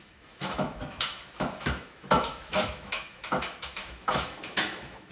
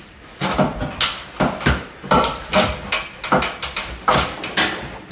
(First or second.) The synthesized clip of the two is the first